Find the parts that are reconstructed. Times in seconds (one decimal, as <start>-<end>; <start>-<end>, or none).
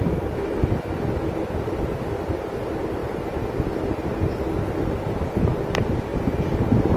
none